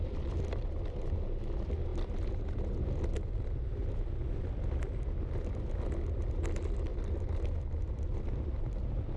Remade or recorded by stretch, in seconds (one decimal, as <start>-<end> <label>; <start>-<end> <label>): 0.0-9.2 recorded